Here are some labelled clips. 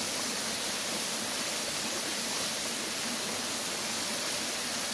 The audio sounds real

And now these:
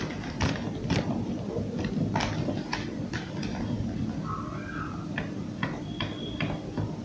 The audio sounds real